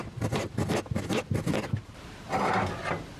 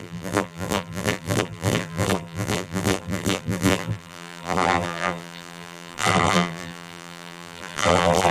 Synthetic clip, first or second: second